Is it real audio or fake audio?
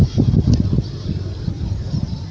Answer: real